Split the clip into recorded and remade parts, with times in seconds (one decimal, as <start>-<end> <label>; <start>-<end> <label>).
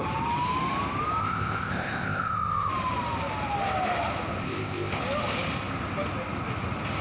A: 0.0-1.2 recorded; 1.2-2.7 remade; 2.7-4.4 recorded; 4.4-5.0 remade; 5.0-7.0 recorded